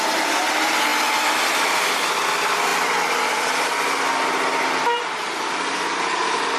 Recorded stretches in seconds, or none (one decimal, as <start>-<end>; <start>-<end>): 0.0-6.6